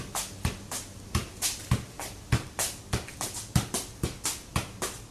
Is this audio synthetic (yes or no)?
no